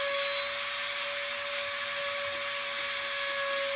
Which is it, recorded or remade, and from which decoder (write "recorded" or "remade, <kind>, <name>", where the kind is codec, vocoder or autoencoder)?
recorded